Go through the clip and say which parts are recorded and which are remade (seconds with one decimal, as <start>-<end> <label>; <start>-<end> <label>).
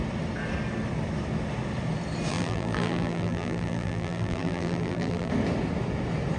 0.0-2.3 recorded; 2.3-5.3 remade; 5.3-6.4 recorded